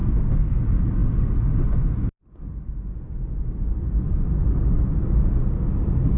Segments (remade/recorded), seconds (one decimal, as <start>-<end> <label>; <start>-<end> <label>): 0.0-0.6 remade; 0.6-6.2 recorded